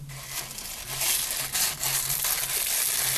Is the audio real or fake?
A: real